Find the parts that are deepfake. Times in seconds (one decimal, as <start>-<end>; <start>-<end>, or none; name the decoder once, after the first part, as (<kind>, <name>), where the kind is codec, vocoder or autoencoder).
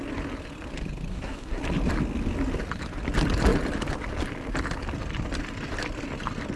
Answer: 1.1-1.6 (codec, SNAC)